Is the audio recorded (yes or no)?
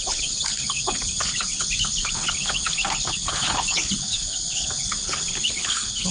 no